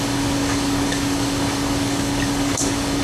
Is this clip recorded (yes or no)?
no